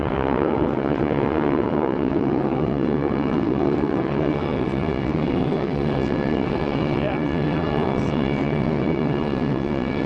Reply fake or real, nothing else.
fake